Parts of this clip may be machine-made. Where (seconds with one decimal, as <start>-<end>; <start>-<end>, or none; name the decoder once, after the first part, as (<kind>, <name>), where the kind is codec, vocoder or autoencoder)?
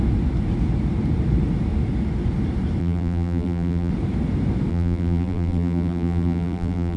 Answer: 2.8-3.9 (vocoder, BigVGAN v2); 4.7-7.0